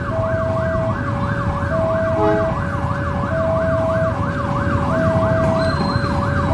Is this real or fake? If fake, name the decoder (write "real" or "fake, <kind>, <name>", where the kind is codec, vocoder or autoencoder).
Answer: real